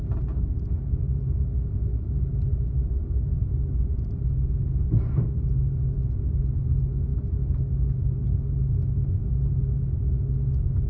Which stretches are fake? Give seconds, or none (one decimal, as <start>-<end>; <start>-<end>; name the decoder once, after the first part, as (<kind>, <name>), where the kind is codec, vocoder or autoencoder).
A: none